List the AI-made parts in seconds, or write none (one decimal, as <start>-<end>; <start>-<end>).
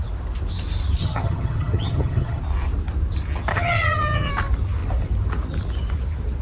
1.0-2.4; 3.5-4.3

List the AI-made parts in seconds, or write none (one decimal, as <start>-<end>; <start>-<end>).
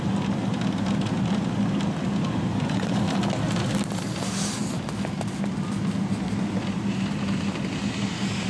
2.5-3.0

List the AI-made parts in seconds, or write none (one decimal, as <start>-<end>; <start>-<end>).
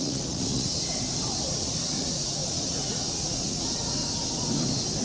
0.0-0.7; 1.5-4.0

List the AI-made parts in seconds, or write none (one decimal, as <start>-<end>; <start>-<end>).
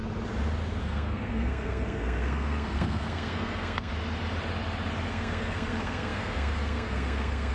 0.8-3.9; 5.1-7.5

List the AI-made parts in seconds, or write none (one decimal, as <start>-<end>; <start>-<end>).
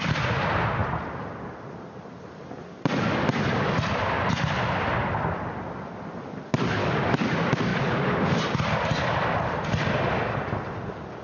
6.8-7.3; 7.7-8.4